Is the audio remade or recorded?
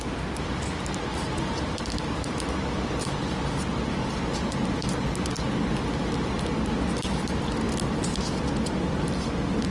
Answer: recorded